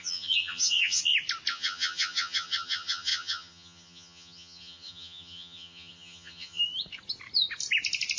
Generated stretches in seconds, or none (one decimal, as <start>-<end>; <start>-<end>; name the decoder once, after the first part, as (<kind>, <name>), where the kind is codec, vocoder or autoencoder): 0.0-1.0 (vocoder, HiFi-GAN); 1.5-6.6